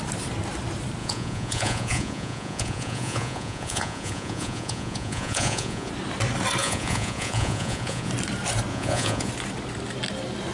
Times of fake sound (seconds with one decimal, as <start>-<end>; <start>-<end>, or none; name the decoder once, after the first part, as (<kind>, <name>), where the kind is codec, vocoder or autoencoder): 1.0-5.9 (vocoder, Vocos); 6.6-8.1; 8.7-9.3